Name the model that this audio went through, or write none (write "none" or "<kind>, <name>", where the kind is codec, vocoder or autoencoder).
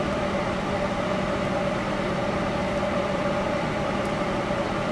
vocoder, BigVGAN v2